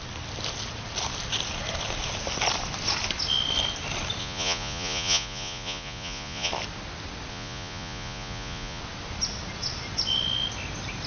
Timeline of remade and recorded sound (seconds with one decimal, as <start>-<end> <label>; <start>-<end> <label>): 0.0-4.2 recorded; 4.2-6.5 remade; 6.5-7.3 recorded; 7.3-8.8 remade; 8.8-11.1 recorded